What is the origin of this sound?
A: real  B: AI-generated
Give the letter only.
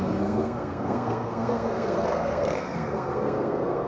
B